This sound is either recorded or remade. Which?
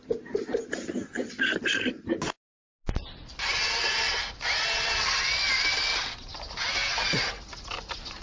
recorded